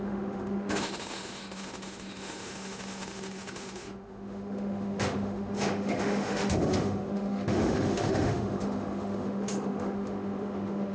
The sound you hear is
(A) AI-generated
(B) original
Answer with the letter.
A